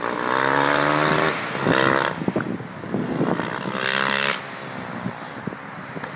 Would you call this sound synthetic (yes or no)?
no